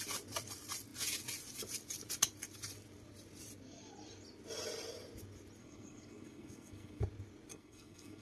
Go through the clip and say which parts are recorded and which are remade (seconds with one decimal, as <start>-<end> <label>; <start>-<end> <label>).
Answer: 0.0-5.6 recorded; 5.6-7.0 remade; 7.0-7.5 recorded; 7.5-8.2 remade